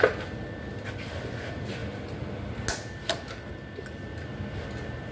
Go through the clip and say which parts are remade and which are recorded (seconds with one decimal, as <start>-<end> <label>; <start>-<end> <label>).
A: 0.0-5.1 recorded